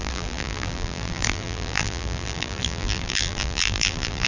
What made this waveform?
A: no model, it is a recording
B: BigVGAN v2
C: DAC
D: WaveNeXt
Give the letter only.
B